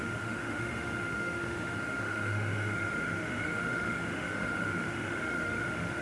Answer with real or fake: fake